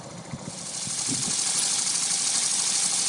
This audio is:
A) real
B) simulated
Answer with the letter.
A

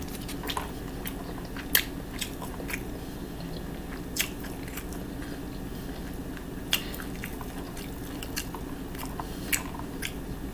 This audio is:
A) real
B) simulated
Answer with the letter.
A